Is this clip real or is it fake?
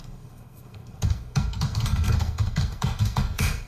fake